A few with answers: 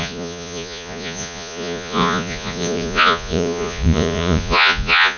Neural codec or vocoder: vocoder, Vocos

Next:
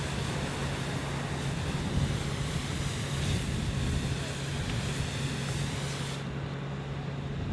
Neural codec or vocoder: none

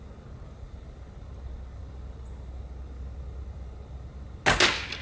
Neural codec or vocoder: none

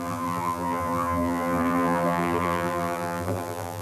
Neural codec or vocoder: vocoder, BigVGAN v2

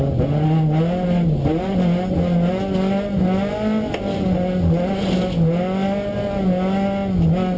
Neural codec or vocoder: none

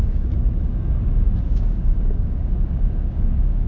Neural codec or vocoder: codec, DAC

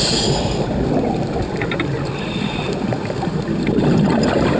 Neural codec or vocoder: vocoder, BigVGAN v2